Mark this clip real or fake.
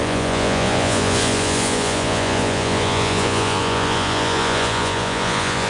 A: fake